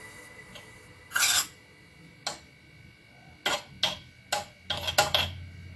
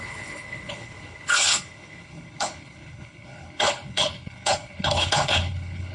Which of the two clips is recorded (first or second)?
first